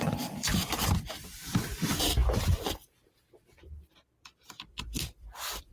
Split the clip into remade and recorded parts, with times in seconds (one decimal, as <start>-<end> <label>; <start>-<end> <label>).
0.0-5.7 remade